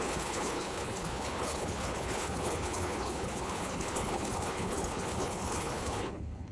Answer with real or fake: fake